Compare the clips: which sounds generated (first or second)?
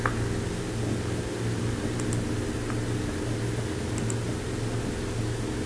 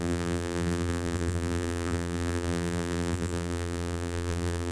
second